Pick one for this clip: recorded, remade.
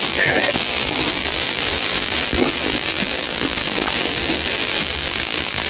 remade